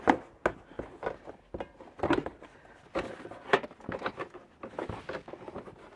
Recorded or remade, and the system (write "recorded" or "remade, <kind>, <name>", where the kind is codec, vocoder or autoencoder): recorded